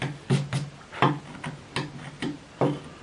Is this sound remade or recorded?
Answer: recorded